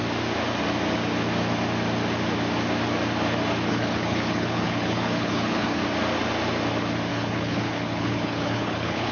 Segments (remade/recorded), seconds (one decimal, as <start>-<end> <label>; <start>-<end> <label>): 0.0-3.7 recorded; 3.7-5.8 remade; 5.8-7.1 recorded; 7.1-9.1 remade